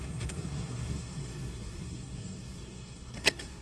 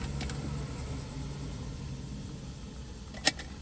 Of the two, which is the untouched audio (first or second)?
second